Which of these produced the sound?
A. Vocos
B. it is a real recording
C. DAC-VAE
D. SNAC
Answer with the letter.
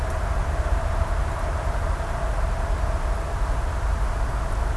B